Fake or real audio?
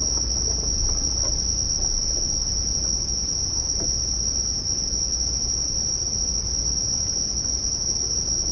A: real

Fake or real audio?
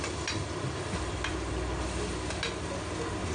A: real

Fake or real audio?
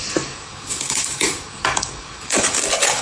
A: fake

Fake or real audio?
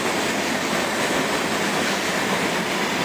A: real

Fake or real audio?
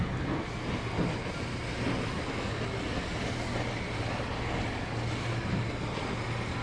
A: real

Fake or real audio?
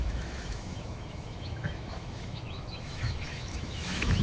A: fake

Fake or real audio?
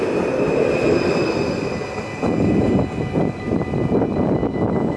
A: real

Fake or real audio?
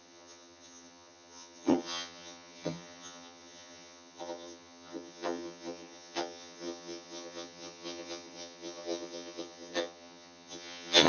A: fake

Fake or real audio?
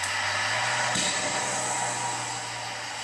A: real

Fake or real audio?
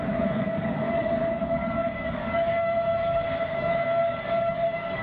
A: fake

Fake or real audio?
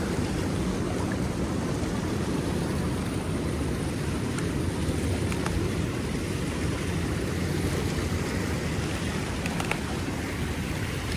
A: fake